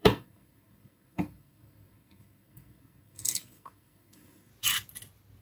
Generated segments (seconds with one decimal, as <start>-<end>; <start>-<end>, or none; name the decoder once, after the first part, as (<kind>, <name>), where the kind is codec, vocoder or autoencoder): 0.0-4.5 (codec, SNAC)